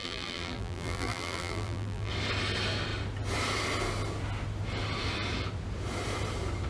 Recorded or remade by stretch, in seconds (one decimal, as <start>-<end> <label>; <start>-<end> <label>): 0.0-2.1 remade; 2.1-6.7 recorded